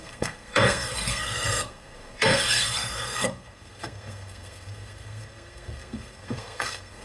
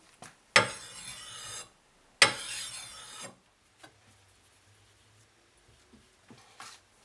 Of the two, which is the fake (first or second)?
first